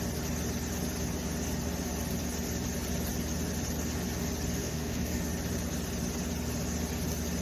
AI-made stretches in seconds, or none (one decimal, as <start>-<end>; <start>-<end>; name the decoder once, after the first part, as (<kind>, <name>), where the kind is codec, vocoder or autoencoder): 4.6-5.2 (codec, DAC)